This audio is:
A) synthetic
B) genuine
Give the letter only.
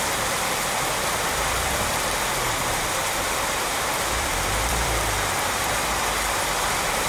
A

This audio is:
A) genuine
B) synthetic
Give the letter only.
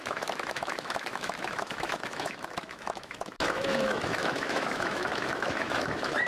B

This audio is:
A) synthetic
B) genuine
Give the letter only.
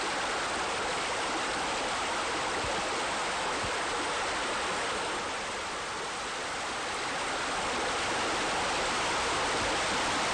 B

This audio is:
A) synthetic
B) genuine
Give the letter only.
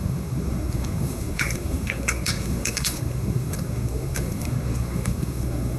A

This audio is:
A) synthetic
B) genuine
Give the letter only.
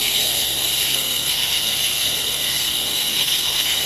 A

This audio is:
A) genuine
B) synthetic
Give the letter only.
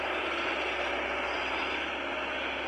A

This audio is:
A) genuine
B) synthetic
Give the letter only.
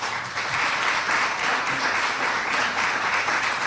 B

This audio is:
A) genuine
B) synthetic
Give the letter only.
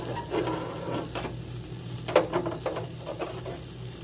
A